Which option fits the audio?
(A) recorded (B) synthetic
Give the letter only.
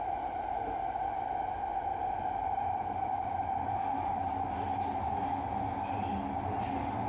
A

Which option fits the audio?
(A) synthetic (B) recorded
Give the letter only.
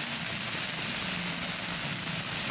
B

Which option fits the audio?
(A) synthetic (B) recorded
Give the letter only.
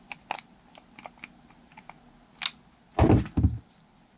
B